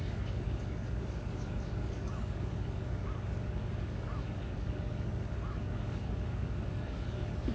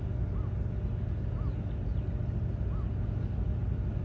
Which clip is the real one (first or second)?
second